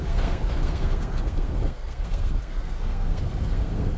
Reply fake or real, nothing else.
fake